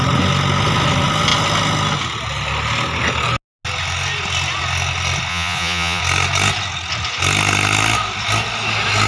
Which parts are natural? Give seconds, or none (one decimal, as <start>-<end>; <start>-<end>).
0.0-5.3; 6.0-9.1